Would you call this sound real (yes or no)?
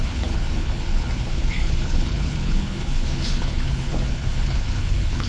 no